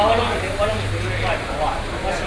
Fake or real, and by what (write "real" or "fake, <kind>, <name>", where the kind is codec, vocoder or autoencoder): real